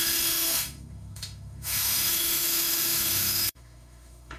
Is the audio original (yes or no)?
no